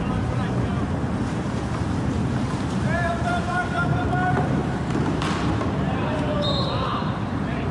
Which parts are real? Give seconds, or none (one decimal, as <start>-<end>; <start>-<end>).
4.6-5.5